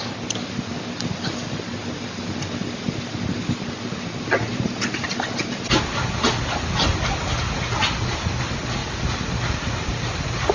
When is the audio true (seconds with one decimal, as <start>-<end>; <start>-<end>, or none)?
0.0-4.5; 5.1-10.5